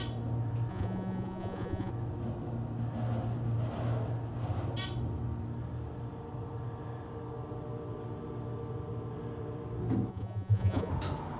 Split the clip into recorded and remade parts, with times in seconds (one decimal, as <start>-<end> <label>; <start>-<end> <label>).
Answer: 0.0-0.7 recorded; 0.7-1.9 remade; 1.9-10.1 recorded; 10.1-10.9 remade; 10.9-11.4 recorded